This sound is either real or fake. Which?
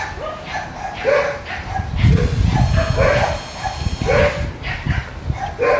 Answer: real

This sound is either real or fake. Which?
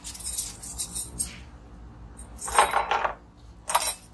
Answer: real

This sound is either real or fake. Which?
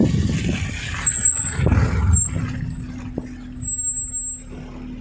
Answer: real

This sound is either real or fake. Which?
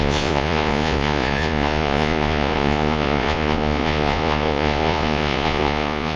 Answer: fake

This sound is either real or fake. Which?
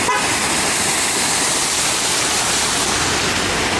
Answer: real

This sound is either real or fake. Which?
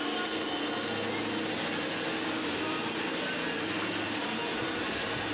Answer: real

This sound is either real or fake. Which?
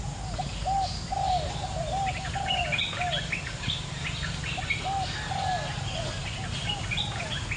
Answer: real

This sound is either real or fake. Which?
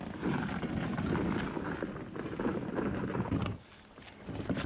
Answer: real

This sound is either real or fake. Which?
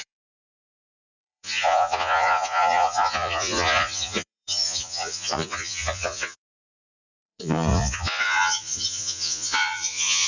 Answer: fake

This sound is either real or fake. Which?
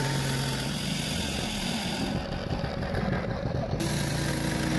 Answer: real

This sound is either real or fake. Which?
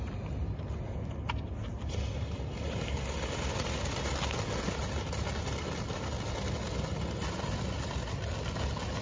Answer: real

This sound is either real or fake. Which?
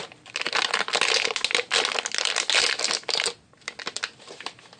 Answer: real